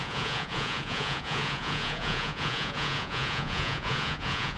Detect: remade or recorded remade